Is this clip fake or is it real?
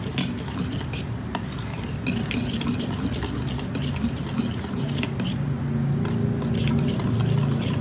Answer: real